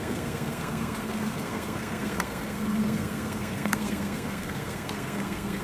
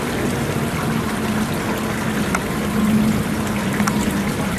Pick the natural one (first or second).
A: second